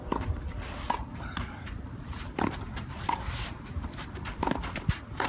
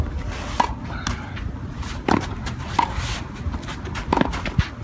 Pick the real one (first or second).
second